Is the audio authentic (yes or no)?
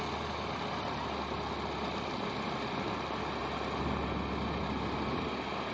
yes